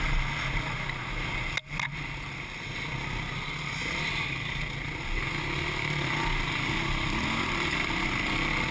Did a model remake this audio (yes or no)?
no